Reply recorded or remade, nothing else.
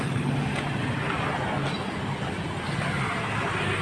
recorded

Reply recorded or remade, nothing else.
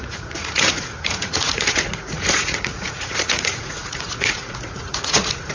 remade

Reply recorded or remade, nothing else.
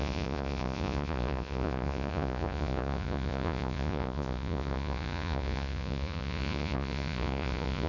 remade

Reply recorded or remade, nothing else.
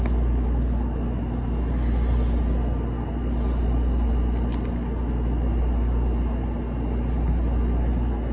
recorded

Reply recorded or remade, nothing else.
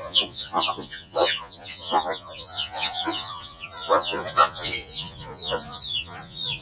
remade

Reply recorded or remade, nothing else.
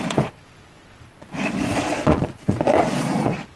remade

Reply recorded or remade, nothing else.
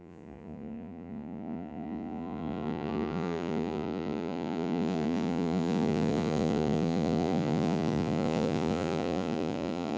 remade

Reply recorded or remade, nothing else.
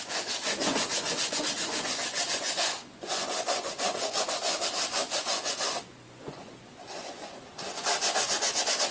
remade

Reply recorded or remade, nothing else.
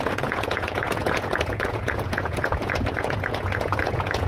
remade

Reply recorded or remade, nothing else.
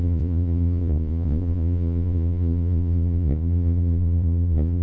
remade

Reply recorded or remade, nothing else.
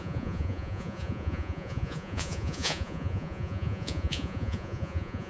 remade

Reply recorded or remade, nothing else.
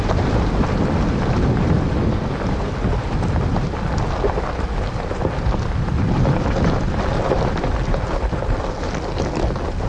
recorded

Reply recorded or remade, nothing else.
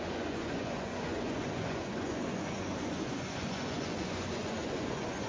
remade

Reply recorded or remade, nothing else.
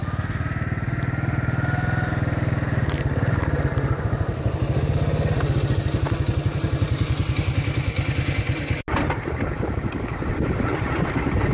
recorded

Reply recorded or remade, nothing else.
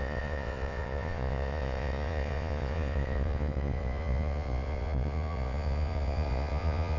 remade